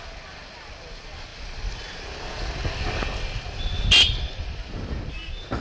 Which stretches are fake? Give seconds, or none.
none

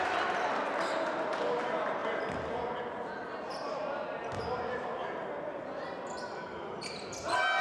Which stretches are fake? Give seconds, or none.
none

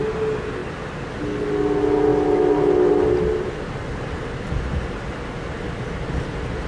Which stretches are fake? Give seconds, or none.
none

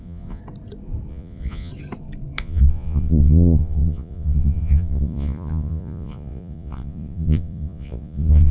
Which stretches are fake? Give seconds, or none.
0.0-0.4 (vocoder, Vocos); 1.1-1.7; 2.4-8.5

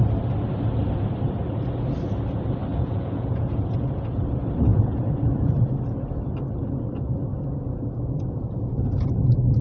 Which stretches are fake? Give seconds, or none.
2.7-4.2 (vocoder, Vocos); 4.7-5.7; 7.3-9.1

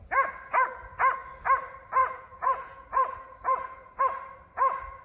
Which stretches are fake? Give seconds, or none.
2.0-4.0 (vocoder, Vocos)

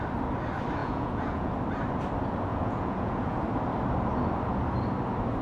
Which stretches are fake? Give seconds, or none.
0.8-1.5 (vocoder, Vocos); 2.5-3.4

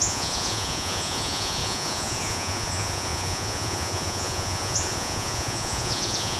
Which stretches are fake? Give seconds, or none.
0.0-6.4 (vocoder, Vocos)